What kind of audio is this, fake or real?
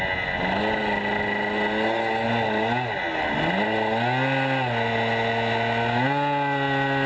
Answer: real